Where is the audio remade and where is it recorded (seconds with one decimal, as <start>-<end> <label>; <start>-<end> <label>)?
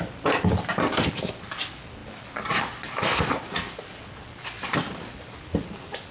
0.0-6.1 recorded